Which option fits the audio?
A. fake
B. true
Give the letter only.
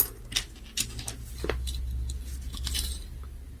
B